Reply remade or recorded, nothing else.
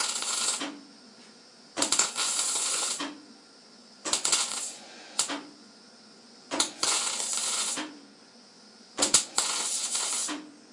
remade